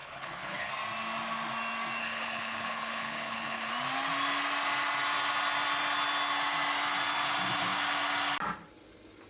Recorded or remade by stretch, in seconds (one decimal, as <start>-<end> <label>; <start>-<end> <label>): 0.0-0.7 remade; 0.7-2.0 recorded; 2.0-3.7 remade; 3.7-9.3 recorded